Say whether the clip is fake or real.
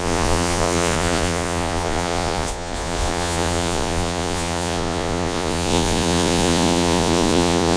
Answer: fake